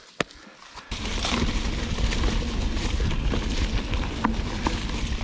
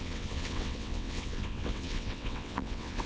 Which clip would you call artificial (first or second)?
second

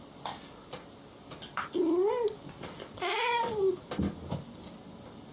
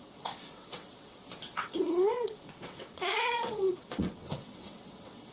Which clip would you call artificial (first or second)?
second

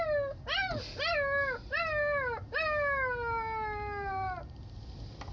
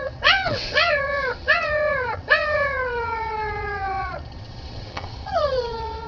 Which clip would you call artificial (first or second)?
second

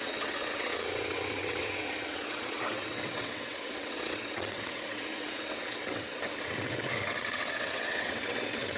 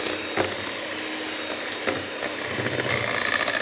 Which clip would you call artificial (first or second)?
first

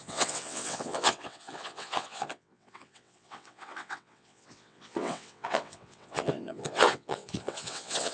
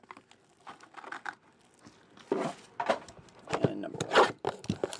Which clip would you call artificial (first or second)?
first